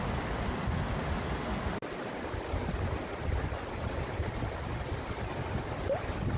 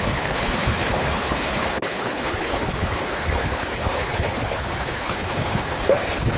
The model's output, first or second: second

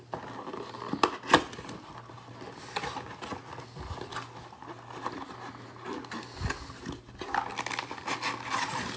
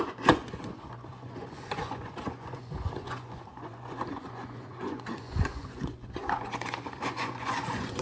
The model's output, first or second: second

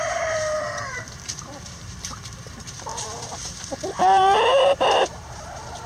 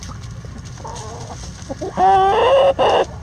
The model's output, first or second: first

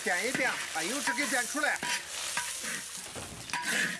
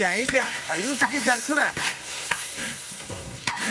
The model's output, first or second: second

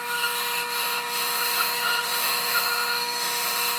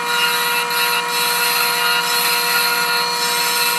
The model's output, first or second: first